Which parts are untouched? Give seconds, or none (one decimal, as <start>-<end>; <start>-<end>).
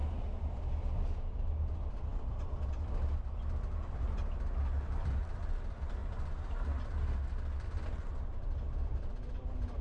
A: 0.0-9.8